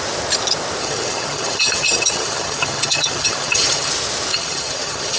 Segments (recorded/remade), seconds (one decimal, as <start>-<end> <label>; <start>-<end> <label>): 0.0-0.8 recorded; 0.8-3.9 remade; 3.9-4.3 recorded; 4.3-5.2 remade